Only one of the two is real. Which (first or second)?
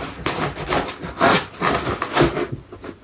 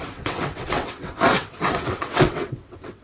first